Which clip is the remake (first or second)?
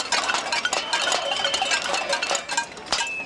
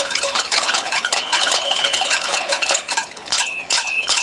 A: second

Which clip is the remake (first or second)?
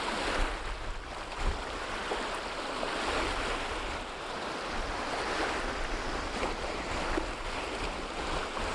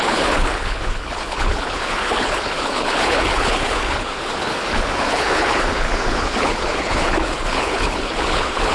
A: second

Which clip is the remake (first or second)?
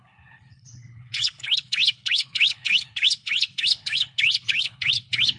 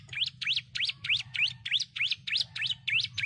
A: first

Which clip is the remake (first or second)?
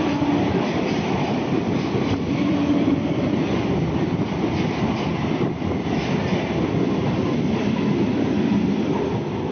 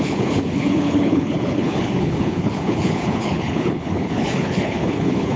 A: second